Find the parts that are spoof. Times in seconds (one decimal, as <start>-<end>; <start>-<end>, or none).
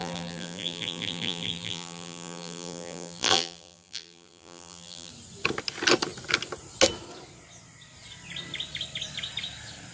0.0-5.1